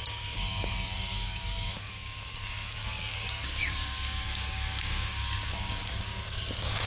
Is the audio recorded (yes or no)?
no